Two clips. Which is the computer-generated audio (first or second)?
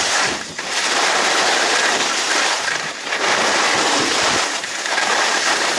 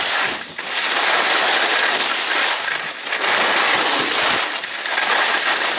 first